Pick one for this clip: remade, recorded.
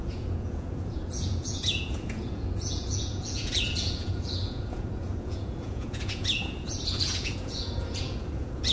remade